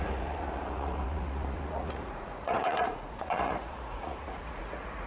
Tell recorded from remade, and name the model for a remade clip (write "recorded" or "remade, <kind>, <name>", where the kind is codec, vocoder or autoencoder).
remade, vocoder, Vocos